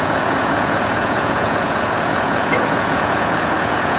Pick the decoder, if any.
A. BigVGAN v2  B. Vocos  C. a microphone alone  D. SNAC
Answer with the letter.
B